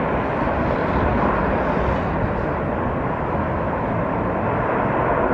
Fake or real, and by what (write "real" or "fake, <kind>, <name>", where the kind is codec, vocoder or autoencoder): real